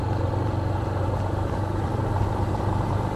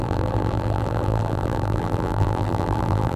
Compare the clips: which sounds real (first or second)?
first